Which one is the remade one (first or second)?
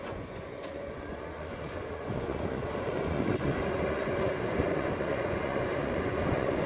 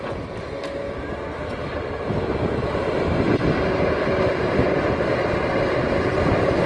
first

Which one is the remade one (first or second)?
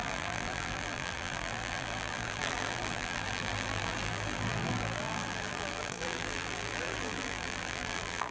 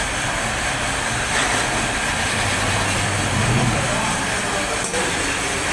first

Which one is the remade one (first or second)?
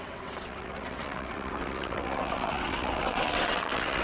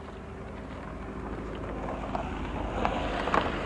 first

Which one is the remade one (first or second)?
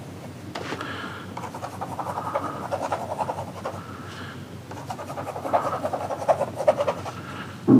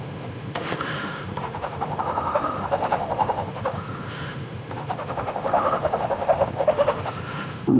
second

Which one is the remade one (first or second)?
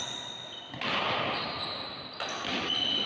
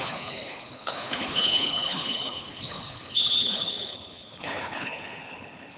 second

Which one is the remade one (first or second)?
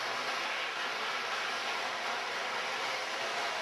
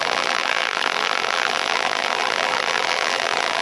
second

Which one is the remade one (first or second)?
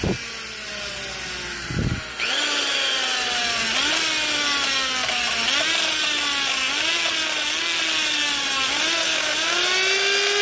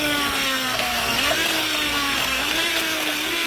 second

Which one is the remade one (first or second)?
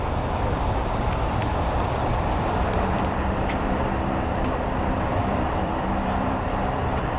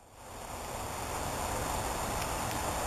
first